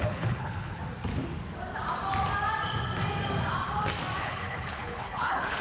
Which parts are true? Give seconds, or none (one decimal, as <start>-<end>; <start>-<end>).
0.8-4.2